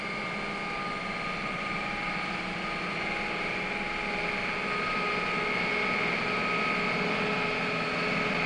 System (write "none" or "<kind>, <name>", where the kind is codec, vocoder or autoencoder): none